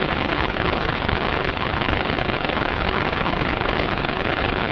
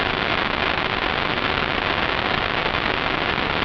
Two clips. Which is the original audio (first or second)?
second